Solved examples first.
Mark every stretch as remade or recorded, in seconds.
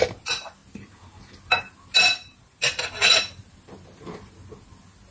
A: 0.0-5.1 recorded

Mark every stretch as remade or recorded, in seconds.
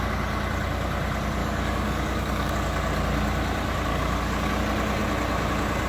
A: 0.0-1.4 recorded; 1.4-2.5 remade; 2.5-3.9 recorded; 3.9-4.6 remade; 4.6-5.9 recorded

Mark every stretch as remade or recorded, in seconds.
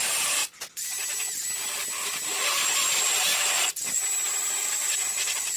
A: 0.0-0.4 remade; 0.4-2.9 recorded; 2.9-4.0 remade; 4.0-4.6 recorded; 4.6-5.6 remade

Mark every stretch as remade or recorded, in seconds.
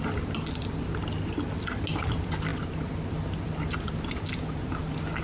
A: 0.0-5.2 recorded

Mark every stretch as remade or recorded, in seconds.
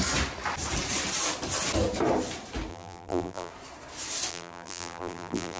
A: 0.0-2.7 recorded; 2.7-3.5 remade; 3.5-4.3 recorded; 4.3-5.6 remade